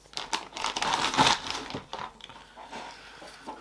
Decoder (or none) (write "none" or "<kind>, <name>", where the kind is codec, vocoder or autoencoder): none